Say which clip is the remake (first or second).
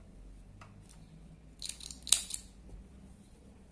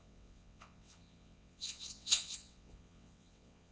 second